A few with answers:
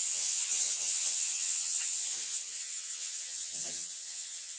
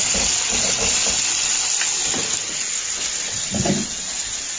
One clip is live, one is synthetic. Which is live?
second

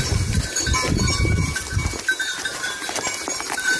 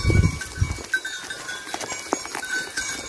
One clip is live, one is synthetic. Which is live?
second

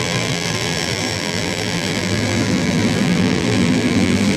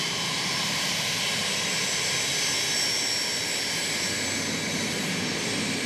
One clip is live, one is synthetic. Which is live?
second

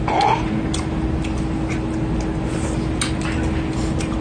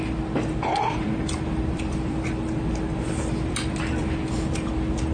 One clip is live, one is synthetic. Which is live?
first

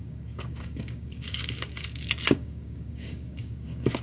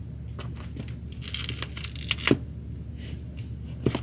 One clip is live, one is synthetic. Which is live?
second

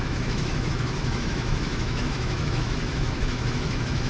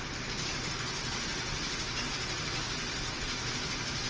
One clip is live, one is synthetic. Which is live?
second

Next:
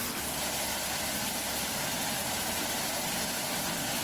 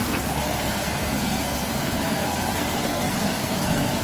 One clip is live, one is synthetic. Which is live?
first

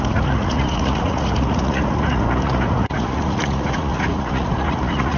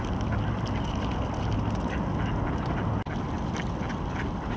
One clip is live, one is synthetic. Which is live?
second